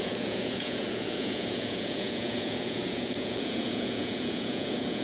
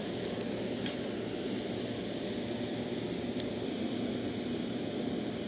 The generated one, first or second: first